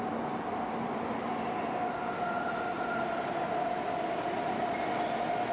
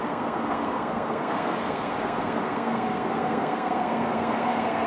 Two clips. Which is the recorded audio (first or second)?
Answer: first